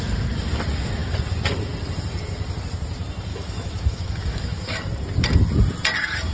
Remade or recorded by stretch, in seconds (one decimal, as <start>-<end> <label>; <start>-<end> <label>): 0.0-3.3 recorded; 3.3-4.8 remade; 4.8-6.3 recorded